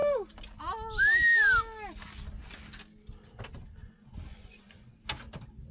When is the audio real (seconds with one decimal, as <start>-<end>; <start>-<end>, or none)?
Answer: 0.0-3.8; 4.9-5.7

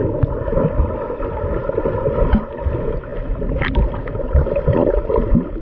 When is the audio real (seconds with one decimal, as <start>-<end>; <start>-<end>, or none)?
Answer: 0.0-3.1; 4.0-5.6